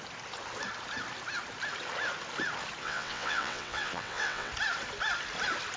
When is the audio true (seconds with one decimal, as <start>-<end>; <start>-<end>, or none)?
0.0-2.8; 4.5-5.8

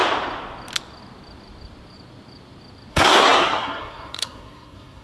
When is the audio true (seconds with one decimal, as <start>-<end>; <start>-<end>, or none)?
0.0-2.9

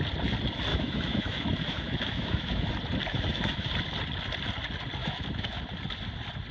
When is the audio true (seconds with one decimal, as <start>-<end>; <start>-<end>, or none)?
0.0-0.7; 2.7-3.1; 3.7-5.0; 5.6-6.5

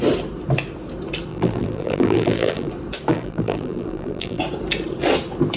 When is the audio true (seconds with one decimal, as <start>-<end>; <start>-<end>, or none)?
0.0-1.3; 2.7-3.1; 4.4-5.6

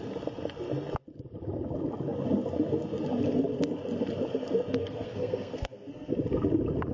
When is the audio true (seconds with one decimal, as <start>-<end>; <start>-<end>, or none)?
0.0-4.8; 6.1-6.9